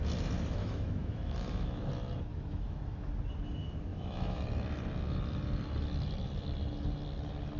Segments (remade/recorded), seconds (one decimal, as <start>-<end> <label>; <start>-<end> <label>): 0.0-0.6 recorded; 0.6-1.9 remade; 1.9-2.3 recorded; 2.3-3.1 remade; 3.1-3.9 recorded; 3.9-4.4 remade; 4.4-7.6 recorded